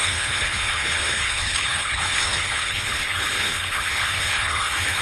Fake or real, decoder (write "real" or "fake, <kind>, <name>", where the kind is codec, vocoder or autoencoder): fake, codec, HILCodec